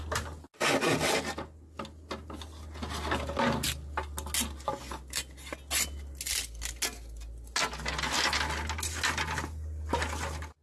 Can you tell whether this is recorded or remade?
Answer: recorded